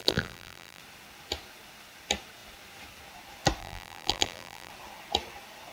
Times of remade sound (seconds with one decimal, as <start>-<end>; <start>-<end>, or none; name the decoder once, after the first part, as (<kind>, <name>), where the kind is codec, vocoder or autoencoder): 0.0-0.8 (vocoder, BigVGAN v2); 3.6-4.7